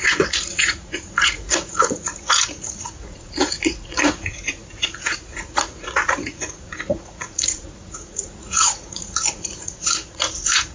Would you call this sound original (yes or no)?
no